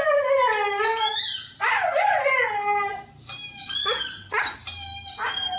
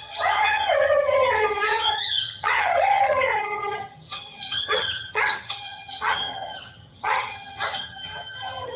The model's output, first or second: second